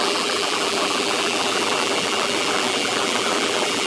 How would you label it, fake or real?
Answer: fake